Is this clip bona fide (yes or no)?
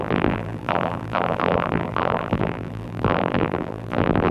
no